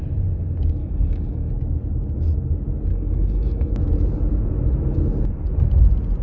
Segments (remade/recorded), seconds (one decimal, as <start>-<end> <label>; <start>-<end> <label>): 0.0-0.8 recorded; 0.8-1.5 remade; 1.5-2.9 recorded; 2.9-3.7 remade; 3.7-6.2 recorded